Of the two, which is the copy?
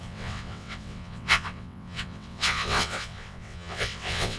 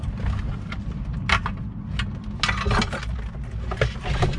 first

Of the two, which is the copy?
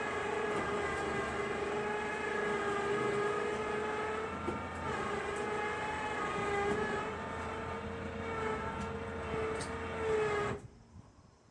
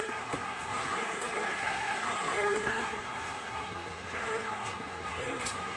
second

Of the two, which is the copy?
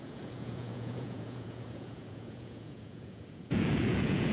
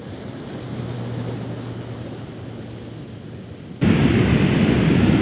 first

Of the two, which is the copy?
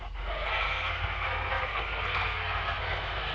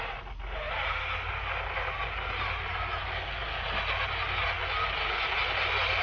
first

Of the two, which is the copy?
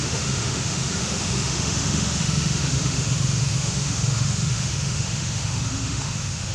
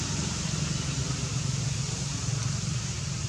first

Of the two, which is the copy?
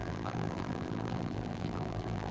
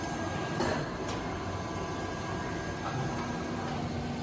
first